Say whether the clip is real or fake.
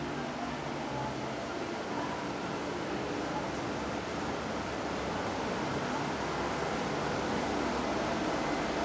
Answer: real